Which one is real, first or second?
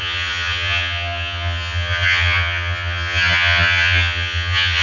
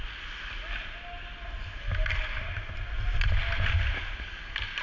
second